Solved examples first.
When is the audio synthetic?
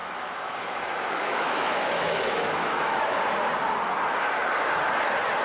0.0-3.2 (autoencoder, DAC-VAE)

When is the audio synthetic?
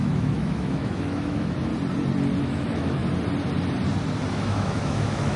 0.0-1.7 (autoencoder, DAC-VAE); 2.4-3.0; 4.3-5.4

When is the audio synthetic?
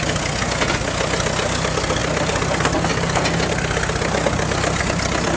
none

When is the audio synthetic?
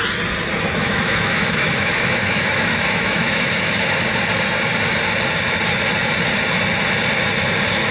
0.8-4.0 (autoencoder, DAC-VAE)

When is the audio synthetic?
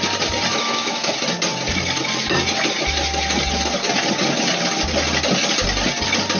0.5-1.1 (autoencoder, DAC-VAE)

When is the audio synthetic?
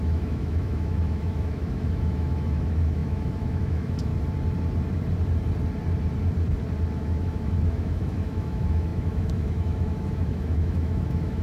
0.0-4.1 (autoencoder, DAC-VAE); 6.9-11.4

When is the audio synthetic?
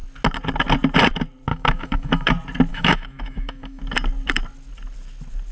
1.5-2.3 (autoencoder, DAC-VAE); 2.7-3.8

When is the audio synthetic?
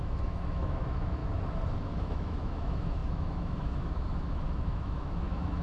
0.0-1.2 (autoencoder, DAC-VAE); 1.7-5.6